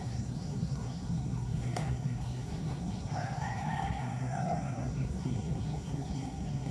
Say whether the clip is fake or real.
fake